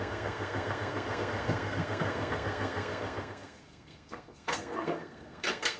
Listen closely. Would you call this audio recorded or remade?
remade